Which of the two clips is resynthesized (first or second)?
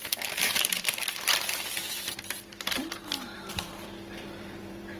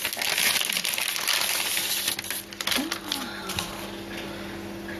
first